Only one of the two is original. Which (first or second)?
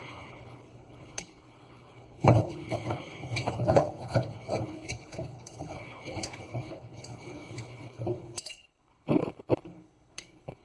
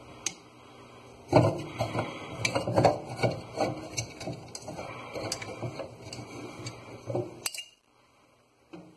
second